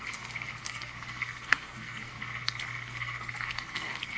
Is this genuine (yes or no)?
no